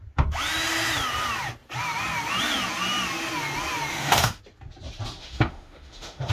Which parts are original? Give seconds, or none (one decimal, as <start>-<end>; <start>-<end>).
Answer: 0.0-3.9; 4.4-5.2